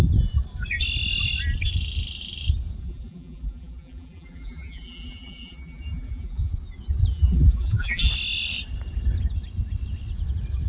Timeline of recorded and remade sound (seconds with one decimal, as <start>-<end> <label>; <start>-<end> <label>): 0.0-2.8 recorded; 2.8-6.5 remade; 6.5-7.1 recorded; 7.1-8.1 remade; 8.1-10.7 recorded